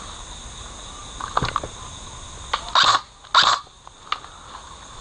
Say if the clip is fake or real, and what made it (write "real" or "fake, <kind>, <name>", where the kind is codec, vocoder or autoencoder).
real